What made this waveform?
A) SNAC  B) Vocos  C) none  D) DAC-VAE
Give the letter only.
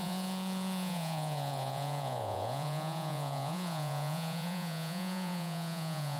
B